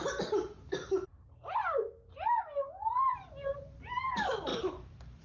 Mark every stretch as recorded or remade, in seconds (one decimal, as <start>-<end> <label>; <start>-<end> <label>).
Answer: 0.0-5.2 recorded